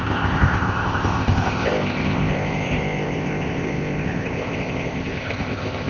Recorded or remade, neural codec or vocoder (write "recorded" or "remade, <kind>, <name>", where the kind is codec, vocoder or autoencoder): remade, codec, ZipCodec